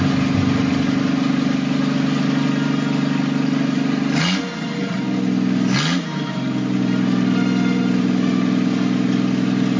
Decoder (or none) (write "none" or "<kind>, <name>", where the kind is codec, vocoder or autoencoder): none